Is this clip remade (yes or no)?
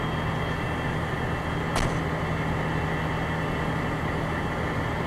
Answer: no